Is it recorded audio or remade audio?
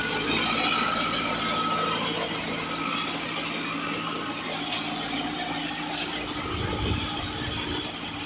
recorded